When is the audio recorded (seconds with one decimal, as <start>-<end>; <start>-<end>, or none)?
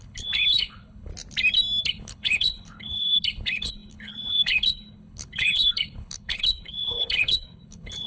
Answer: 1.1-1.8